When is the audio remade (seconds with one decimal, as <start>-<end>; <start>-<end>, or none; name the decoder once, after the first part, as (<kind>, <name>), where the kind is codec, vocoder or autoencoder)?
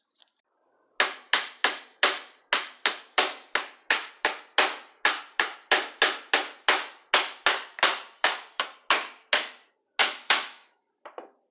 10.0-10.8 (autoencoder, DAC-VAE)